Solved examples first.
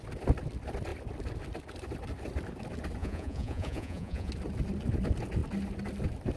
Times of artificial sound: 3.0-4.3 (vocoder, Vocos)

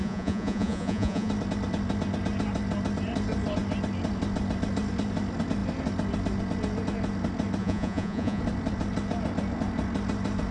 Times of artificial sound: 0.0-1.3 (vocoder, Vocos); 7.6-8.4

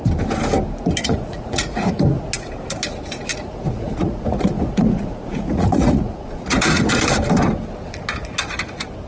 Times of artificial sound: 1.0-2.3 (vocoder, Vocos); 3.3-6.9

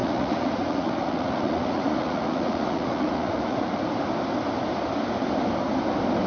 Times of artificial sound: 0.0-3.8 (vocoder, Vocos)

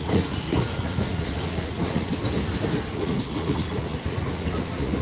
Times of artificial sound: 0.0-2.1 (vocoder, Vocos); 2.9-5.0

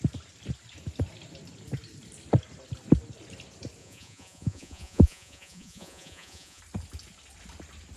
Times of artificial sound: 3.8-6.6 (vocoder, Vocos)